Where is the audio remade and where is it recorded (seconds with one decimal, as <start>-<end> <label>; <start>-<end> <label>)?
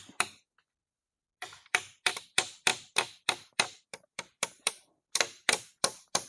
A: 0.0-6.3 recorded